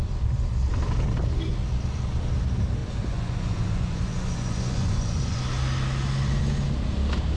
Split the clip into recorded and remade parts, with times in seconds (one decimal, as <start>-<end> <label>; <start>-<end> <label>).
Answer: 0.0-2.8 recorded; 2.8-5.4 remade; 5.4-7.4 recorded